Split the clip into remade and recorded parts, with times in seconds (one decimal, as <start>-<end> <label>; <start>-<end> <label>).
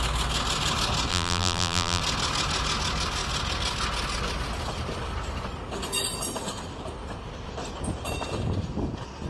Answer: 0.0-1.1 recorded; 1.1-2.0 remade; 2.0-9.3 recorded